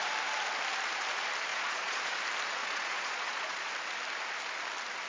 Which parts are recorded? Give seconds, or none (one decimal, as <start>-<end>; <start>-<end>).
0.0-1.5; 2.1-2.6; 3.7-5.1